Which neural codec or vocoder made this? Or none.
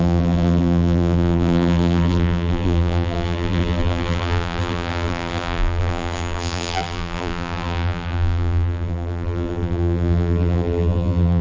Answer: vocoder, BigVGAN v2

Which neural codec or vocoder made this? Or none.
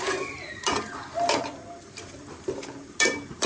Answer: vocoder, BigVGAN v2